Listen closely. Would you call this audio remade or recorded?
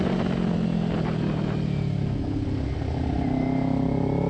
recorded